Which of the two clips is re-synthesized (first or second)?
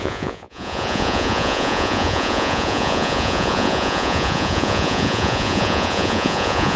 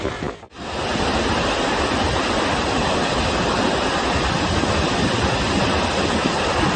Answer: first